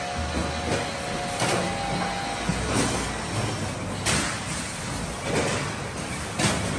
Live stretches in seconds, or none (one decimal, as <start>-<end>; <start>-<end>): 0.0-6.8